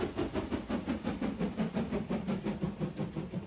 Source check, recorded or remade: recorded